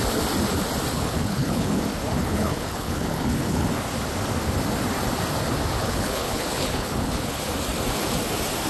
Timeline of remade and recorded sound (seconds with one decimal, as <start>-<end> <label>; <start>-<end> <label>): 0.0-0.9 recorded; 0.9-1.8 remade; 1.8-2.2 recorded; 2.2-3.7 remade; 3.7-5.8 recorded; 5.8-7.4 remade; 7.4-8.7 recorded